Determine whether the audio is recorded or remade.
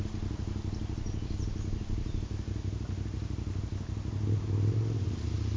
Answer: recorded